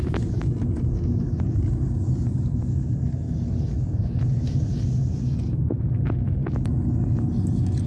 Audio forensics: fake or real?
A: real